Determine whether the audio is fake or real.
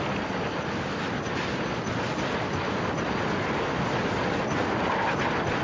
real